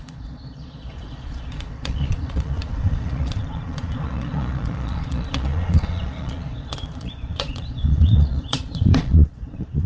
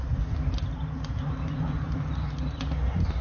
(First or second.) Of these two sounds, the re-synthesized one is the first